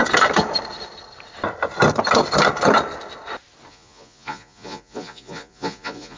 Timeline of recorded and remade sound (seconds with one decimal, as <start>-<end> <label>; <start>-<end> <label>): 0.0-3.7 recorded; 3.7-6.2 remade